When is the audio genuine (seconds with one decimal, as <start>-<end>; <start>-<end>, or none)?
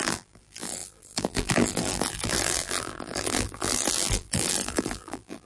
none